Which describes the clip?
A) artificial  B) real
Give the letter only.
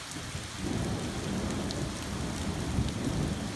B